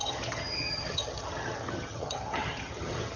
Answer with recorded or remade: remade